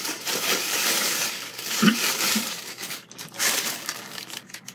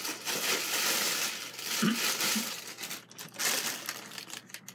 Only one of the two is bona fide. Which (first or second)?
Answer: second